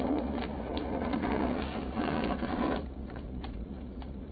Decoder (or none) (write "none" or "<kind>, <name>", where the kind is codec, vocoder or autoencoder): vocoder, Vocos